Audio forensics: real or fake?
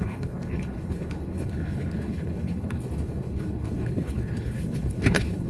fake